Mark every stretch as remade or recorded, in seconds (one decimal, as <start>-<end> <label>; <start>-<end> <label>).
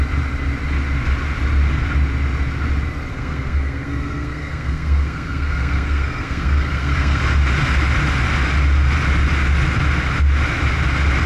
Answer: 0.0-3.1 recorded; 3.1-7.2 remade; 7.2-11.3 recorded